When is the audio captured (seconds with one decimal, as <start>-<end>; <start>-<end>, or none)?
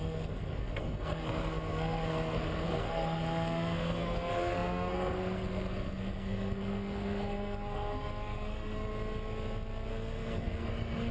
8.9-9.9